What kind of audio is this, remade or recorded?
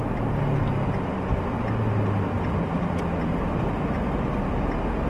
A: recorded